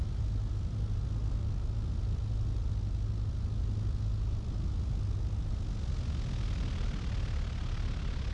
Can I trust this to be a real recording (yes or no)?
yes